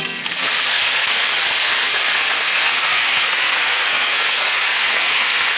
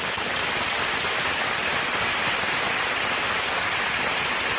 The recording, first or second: second